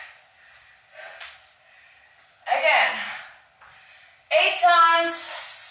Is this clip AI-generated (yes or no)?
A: no